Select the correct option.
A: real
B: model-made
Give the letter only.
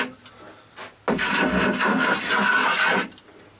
A